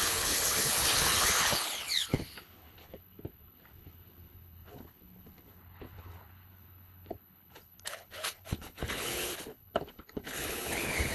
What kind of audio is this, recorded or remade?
remade